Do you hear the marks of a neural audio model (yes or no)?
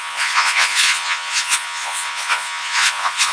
yes